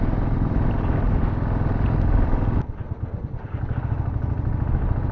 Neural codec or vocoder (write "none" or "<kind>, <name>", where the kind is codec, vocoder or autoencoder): none